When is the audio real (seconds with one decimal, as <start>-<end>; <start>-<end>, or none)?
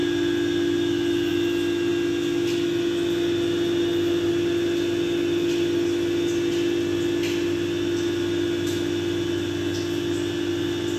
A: 0.0-11.0